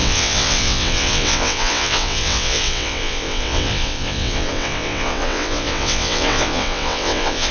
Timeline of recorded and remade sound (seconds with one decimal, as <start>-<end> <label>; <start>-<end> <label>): 0.0-7.5 remade